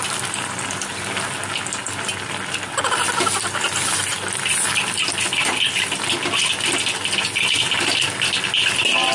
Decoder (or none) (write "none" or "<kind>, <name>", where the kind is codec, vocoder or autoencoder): none